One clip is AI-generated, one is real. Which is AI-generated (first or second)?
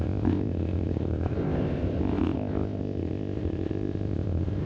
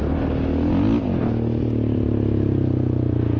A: first